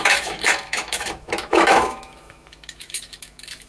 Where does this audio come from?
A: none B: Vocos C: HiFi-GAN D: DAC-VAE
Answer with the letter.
D